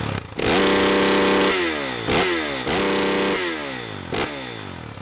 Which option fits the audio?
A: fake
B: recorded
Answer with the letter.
B